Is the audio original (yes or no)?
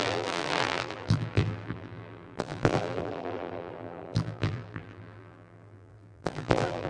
no